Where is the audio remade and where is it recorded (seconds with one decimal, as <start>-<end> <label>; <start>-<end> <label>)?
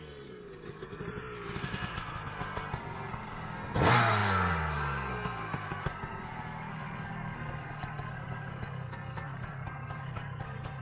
0.0-1.0 remade; 1.0-1.6 recorded; 1.6-10.8 remade